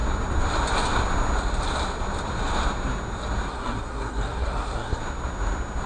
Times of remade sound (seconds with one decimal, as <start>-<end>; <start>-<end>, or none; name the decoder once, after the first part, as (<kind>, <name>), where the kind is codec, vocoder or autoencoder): 3.5-5.0 (codec, SNAC)